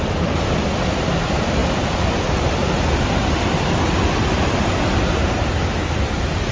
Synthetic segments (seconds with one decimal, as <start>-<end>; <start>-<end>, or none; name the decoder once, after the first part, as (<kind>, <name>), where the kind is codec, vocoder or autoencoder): none